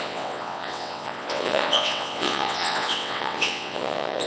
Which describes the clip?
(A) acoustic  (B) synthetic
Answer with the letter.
B